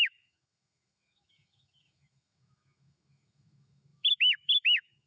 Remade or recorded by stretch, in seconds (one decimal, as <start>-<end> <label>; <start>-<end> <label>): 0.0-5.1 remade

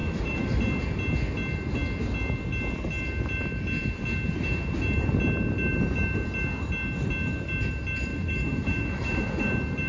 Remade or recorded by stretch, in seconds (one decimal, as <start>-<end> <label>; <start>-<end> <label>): 0.0-0.6 remade; 0.6-8.1 recorded; 8.1-9.3 remade; 9.3-9.9 recorded

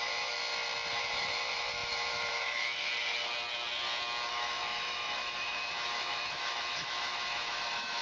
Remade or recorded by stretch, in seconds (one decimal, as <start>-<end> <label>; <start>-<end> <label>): 0.0-0.4 remade; 0.4-0.9 recorded; 0.9-2.9 remade; 2.9-4.3 recorded; 4.3-8.0 remade

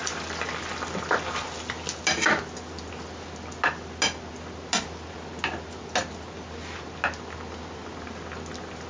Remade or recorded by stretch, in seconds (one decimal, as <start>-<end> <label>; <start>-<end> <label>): 0.0-8.9 recorded

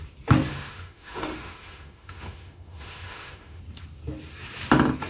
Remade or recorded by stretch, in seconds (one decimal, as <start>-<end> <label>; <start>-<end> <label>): 0.0-0.5 recorded; 0.5-3.6 remade; 3.6-5.1 recorded